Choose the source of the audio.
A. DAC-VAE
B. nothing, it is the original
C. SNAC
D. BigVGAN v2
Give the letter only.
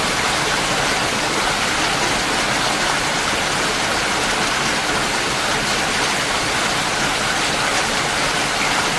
B